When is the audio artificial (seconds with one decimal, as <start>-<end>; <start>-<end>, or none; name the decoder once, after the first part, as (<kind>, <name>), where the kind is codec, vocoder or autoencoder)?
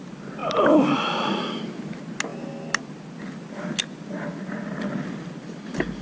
none